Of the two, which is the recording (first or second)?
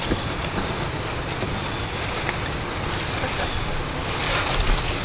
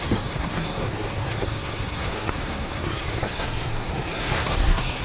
first